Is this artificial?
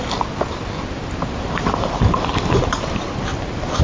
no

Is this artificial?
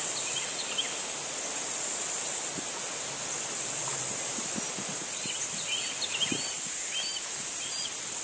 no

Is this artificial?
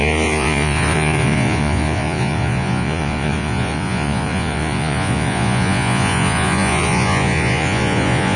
yes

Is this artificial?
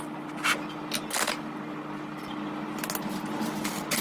no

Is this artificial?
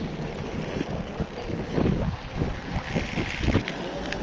no